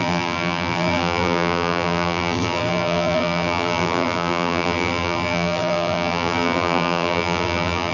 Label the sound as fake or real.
fake